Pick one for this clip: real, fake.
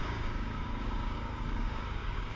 fake